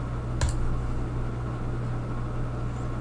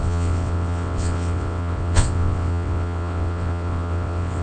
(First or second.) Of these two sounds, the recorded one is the first